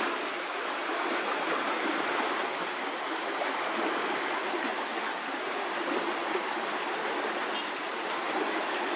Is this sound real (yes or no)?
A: yes